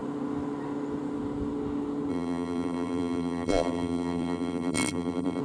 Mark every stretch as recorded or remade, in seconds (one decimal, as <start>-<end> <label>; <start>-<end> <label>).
0.0-2.1 recorded; 2.1-5.4 remade